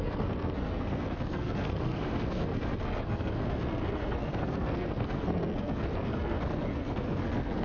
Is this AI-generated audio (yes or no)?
yes